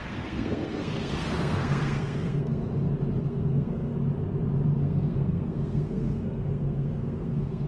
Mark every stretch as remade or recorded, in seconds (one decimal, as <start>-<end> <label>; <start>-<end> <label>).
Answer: 0.0-2.6 remade; 2.6-3.2 recorded; 3.2-3.9 remade; 3.9-4.8 recorded; 4.8-7.7 remade